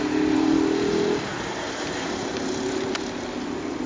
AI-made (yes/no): no